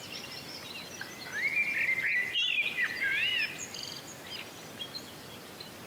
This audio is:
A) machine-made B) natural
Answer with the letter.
A